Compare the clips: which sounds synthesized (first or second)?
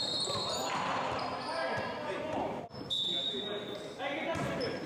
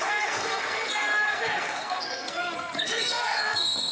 second